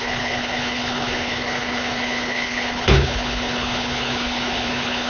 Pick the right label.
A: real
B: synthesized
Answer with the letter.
B